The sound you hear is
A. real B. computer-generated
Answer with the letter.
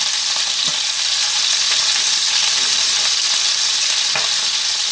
A